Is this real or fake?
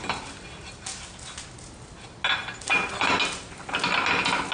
real